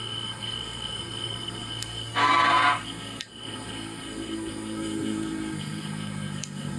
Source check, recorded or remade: remade